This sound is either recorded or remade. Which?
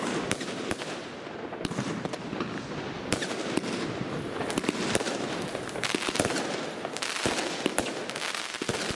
recorded